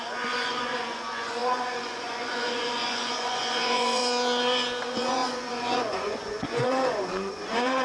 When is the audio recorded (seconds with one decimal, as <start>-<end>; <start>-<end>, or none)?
4.0-4.8